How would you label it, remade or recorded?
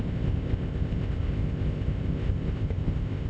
remade